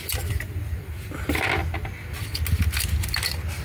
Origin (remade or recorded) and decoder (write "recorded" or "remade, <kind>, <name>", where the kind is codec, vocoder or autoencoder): recorded